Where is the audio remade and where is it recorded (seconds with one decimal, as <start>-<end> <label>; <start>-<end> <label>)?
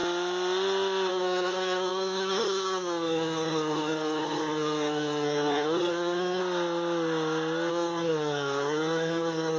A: 0.0-1.1 recorded; 1.1-6.4 remade; 6.4-7.7 recorded; 7.7-9.6 remade